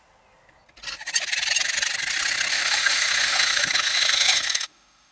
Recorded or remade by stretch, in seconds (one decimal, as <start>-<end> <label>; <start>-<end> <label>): 0.0-2.5 recorded; 2.5-5.1 remade